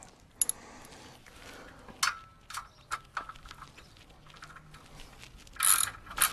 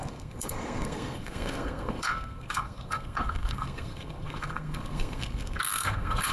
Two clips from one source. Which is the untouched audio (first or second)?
first